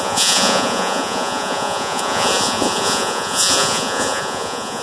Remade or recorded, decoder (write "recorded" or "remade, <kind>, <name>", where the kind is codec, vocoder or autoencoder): remade, vocoder, Vocos